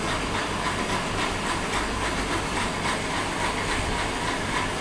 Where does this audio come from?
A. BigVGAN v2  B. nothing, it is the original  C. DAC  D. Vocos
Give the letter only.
B